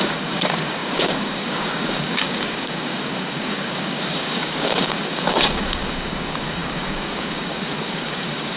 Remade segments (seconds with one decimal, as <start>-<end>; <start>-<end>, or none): 0.0-8.6

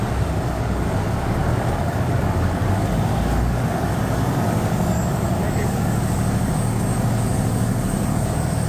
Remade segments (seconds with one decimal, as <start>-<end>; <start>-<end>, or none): 0.0-8.7

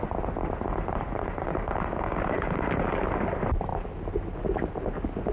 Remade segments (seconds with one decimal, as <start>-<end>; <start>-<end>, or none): 1.5-2.8

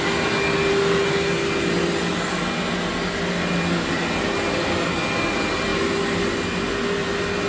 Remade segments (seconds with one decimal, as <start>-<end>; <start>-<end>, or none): none

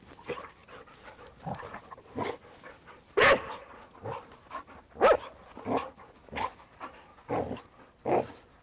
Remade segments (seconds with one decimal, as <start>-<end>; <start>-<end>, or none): none

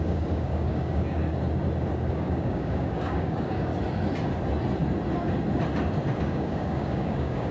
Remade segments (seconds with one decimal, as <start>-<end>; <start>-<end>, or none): 0.0-1.2; 2.1-3.7; 6.2-7.5

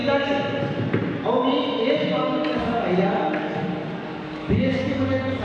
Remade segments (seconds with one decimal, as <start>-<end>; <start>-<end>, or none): 2.2-5.4

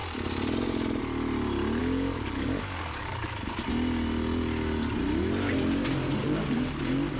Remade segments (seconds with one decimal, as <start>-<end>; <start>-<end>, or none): 1.8-3.7